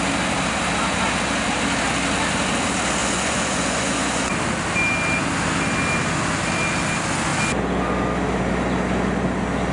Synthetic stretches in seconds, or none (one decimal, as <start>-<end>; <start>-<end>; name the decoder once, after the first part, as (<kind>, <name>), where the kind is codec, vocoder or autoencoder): 3.0-4.3 (vocoder, Vocos)